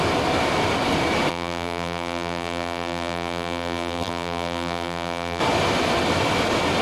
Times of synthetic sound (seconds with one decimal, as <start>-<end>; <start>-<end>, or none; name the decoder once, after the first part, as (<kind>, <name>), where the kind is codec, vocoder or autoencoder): 1.3-5.4 (vocoder, BigVGAN v2)